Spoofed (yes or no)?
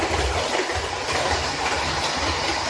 no